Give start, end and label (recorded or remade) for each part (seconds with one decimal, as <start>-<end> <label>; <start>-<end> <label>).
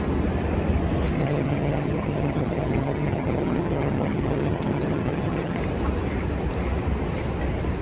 0.0-1.2 recorded; 1.2-5.6 remade; 5.6-7.8 recorded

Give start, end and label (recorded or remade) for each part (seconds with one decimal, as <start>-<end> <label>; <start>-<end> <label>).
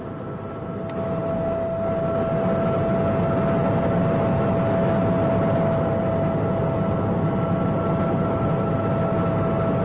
0.0-9.8 recorded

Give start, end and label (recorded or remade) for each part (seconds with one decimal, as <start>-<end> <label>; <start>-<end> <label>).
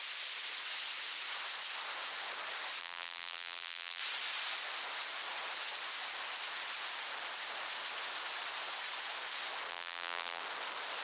0.0-2.8 recorded; 2.8-4.0 remade; 4.0-9.7 recorded; 9.7-10.4 remade; 10.4-11.0 recorded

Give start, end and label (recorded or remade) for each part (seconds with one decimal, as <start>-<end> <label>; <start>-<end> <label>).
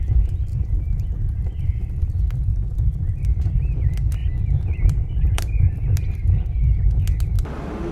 0.0-0.5 recorded; 0.5-1.9 remade; 1.9-4.2 recorded; 4.2-6.4 remade; 6.4-7.9 recorded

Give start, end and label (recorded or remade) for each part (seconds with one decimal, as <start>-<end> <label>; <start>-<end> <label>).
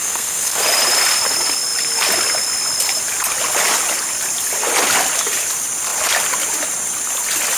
0.0-0.6 remade; 0.6-7.6 recorded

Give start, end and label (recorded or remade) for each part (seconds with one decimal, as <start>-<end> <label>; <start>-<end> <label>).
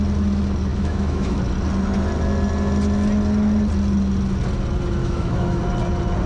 0.0-0.7 recorded; 0.7-1.4 remade; 1.4-5.0 recorded; 5.0-5.6 remade; 5.6-6.3 recorded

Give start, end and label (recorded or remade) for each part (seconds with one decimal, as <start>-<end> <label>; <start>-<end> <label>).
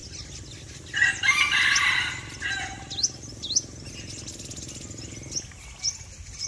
0.0-6.5 recorded